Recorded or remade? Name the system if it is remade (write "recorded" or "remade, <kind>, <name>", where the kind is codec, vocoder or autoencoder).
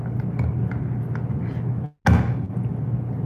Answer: recorded